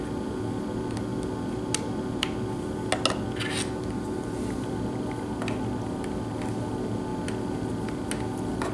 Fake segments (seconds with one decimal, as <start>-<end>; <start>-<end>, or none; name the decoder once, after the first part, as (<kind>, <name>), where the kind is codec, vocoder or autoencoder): none